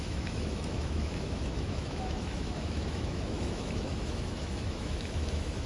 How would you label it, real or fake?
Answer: fake